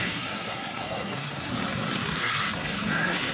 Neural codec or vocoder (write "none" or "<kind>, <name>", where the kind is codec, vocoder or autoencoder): codec, SNAC